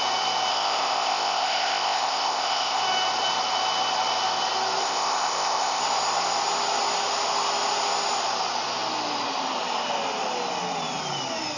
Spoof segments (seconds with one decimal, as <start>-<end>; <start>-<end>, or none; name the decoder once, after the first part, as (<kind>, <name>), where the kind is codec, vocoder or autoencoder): 0.5-2.8 (codec, ZipCodec); 4.8-5.8